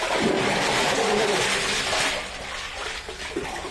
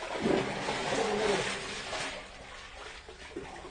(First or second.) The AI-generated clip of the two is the first